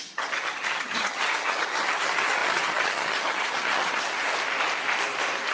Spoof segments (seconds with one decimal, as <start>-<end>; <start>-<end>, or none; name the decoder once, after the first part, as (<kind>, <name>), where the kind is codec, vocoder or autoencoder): 0.0-4.3 (vocoder, HiFi-GAN)